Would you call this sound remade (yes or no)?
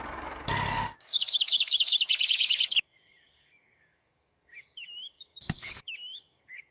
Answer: yes